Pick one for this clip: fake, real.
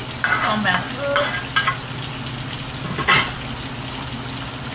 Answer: real